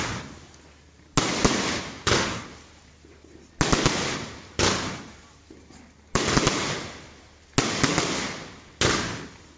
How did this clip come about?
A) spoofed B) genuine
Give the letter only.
B